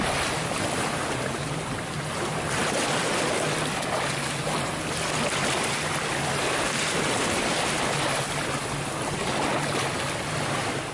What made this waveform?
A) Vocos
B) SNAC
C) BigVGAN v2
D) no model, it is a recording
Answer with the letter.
D